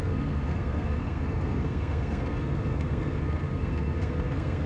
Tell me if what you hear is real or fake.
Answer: fake